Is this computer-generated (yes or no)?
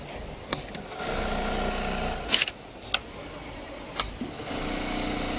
no